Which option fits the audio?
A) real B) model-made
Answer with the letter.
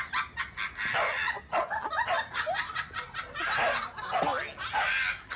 A